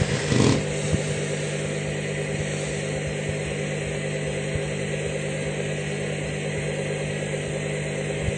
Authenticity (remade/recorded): recorded